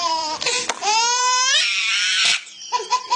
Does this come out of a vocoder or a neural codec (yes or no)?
yes